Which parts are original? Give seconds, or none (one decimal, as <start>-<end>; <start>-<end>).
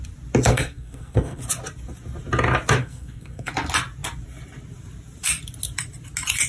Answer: 0.0-0.5; 1.4-2.8; 3.5-6.5